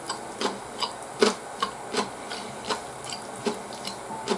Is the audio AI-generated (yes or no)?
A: yes